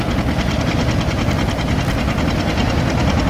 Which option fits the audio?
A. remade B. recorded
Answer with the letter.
A